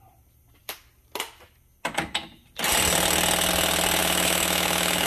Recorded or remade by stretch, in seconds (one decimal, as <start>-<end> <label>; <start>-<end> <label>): 0.0-4.0 recorded; 4.0-5.1 remade